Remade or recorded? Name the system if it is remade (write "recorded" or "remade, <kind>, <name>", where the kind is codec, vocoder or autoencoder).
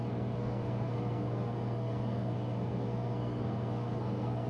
remade, codec, SNAC